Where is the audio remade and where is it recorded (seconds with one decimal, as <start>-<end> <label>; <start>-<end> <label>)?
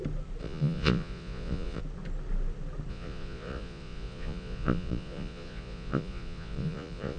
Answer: 0.0-0.4 recorded; 0.4-1.8 remade; 1.8-2.9 recorded; 2.9-7.2 remade